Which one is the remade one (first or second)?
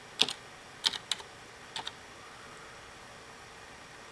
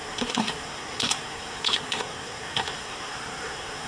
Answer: second